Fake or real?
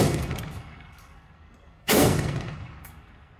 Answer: fake